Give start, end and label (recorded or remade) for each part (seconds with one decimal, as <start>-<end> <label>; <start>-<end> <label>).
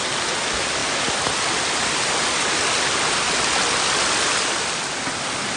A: 0.0-5.6 recorded